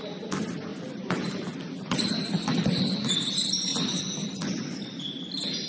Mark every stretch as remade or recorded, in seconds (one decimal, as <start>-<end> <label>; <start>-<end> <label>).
0.0-0.7 recorded; 0.7-3.3 remade; 3.3-5.7 recorded